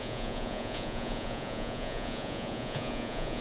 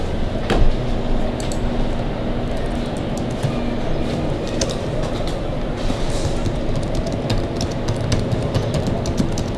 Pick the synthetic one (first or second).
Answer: first